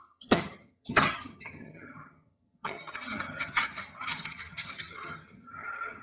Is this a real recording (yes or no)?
no